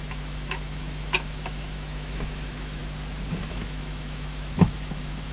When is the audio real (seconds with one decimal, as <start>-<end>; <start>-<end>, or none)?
2.8-3.5